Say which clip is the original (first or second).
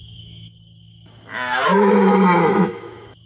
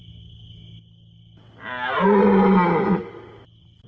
second